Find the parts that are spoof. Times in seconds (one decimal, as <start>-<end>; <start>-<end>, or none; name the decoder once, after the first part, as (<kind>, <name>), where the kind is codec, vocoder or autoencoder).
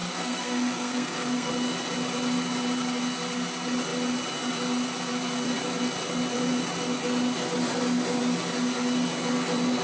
0.0-1.5 (codec, SNAC)